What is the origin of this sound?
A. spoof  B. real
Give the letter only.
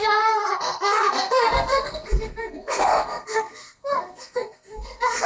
A